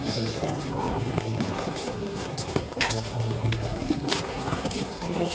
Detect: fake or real fake